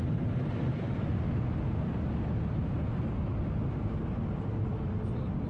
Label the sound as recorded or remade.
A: recorded